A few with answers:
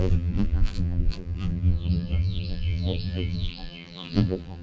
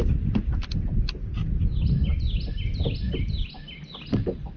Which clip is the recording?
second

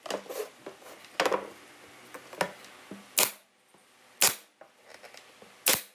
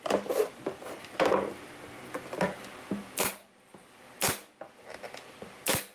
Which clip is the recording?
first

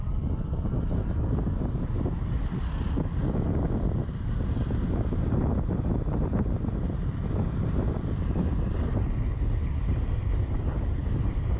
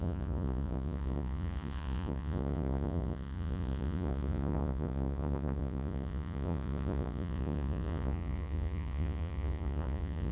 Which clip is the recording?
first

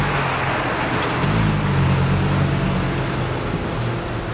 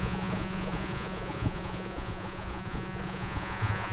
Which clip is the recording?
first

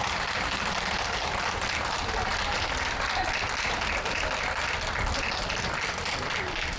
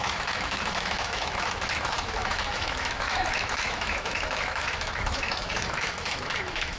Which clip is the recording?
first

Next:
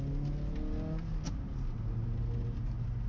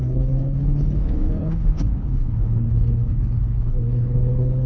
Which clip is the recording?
first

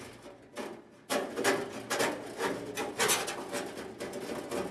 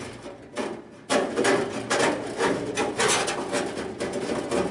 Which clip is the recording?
first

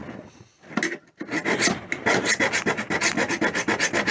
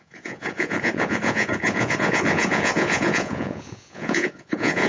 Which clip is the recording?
first